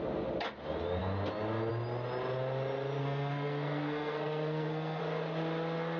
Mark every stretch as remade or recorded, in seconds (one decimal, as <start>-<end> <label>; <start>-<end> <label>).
0.0-3.0 recorded; 3.0-5.0 remade; 5.0-6.0 recorded